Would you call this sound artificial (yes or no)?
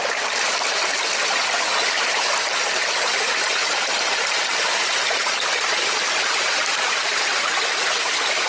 yes